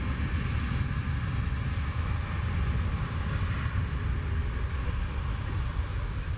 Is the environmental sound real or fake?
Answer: real